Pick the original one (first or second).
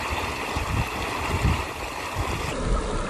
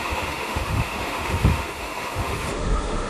first